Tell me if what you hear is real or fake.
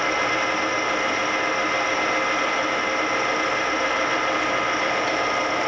real